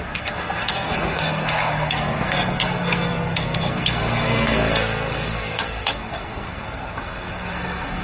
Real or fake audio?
fake